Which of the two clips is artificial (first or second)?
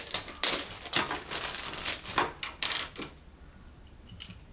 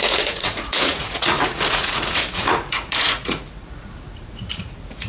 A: second